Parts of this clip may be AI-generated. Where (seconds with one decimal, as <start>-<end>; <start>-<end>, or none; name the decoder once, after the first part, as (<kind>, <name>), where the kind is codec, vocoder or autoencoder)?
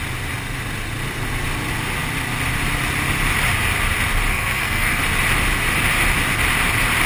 4.3-5.0 (codec, SNAC)